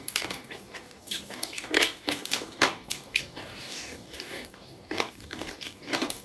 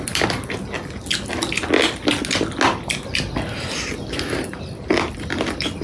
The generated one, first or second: first